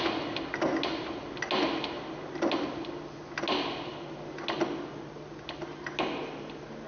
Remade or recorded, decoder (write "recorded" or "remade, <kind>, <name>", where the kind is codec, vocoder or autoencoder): recorded